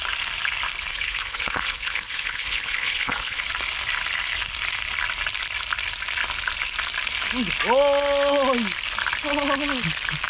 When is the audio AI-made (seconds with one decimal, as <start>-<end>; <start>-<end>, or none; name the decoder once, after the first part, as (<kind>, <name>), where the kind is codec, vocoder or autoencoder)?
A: 0.9-3.4 (codec, HILCodec)